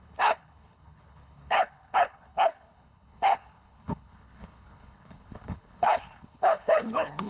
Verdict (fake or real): fake